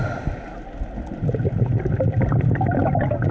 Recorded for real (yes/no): yes